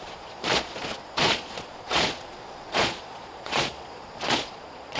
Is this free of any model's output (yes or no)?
no